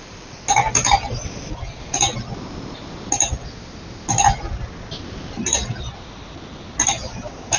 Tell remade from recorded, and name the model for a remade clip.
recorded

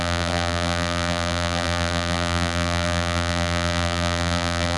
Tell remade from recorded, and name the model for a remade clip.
remade, vocoder, BigVGAN v2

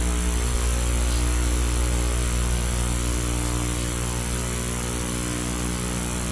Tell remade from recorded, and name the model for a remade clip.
recorded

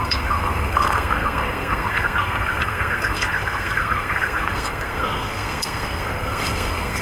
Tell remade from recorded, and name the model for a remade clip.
remade, codec, SNAC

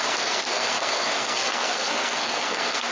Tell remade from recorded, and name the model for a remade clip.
remade, codec, SNAC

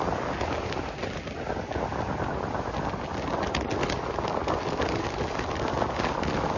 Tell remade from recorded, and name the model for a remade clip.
recorded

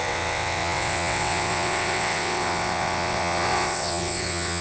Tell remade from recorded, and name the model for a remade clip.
remade, vocoder, WaveNeXt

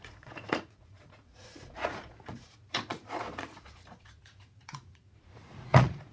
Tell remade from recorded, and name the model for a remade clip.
remade, vocoder, Vocos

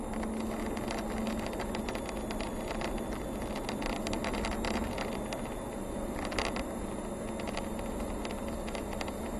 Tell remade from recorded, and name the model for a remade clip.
recorded